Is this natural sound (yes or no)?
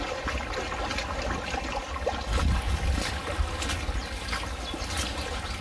yes